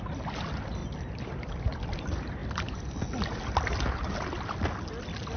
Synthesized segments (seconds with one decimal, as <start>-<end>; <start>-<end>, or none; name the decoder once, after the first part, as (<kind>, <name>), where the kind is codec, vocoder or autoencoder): none